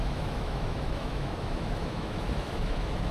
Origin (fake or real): fake